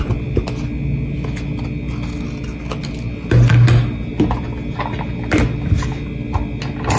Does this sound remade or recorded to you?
recorded